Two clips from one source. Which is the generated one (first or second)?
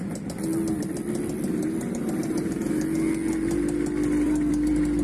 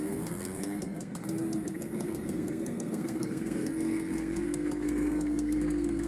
second